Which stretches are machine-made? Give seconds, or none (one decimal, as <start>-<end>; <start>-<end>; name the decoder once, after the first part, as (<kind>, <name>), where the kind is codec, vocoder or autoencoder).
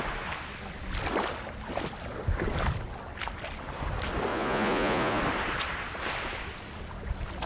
4.3-5.2 (vocoder, Vocos)